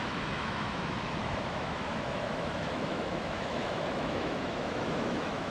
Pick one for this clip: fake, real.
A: fake